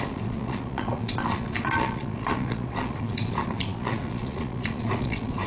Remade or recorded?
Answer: remade